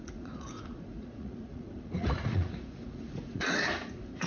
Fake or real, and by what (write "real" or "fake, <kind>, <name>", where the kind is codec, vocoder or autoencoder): fake, vocoder, Vocos